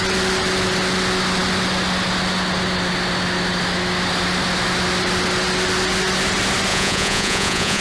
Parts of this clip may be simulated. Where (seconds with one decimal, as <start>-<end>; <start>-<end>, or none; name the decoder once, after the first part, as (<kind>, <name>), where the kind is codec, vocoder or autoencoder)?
6.7-7.8 (vocoder, Vocos)